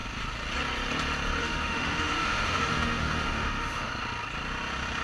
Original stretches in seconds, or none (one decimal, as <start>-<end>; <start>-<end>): 0.0-1.4; 3.9-5.0